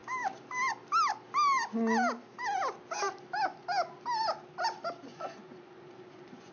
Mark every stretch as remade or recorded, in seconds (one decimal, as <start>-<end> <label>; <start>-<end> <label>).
0.0-5.1 recorded; 5.1-6.5 remade